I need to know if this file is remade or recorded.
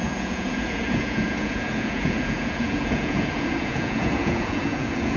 remade